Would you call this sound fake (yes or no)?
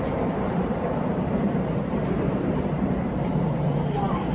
yes